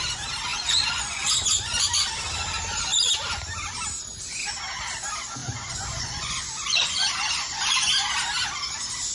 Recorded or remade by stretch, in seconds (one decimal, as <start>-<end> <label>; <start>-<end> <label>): 0.0-0.5 recorded; 0.5-1.8 remade; 1.8-5.4 recorded; 5.4-7.9 remade; 7.9-9.1 recorded